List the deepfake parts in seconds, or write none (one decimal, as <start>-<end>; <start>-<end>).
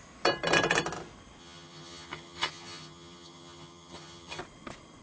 1.4-4.4